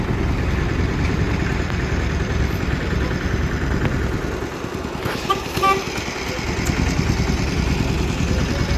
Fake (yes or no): no